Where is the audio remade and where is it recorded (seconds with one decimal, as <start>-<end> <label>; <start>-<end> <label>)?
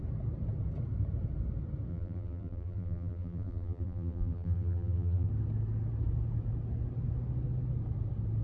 0.0-1.9 recorded; 1.9-5.3 remade; 5.3-8.4 recorded